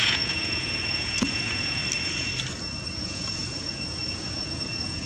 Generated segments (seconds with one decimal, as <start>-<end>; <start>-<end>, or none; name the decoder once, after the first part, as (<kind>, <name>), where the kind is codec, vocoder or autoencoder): 0.0-1.8 (vocoder, Vocos); 3.0-5.1